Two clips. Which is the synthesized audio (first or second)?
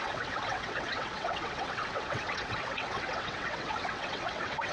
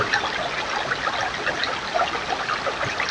first